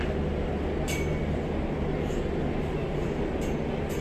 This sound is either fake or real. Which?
real